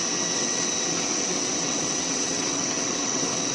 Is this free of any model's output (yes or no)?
no